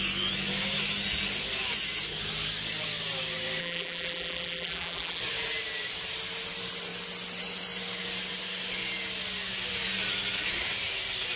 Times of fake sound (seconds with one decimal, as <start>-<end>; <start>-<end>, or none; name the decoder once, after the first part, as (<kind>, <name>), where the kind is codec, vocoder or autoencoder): 3.6-5.2 (vocoder, BigVGAN v2)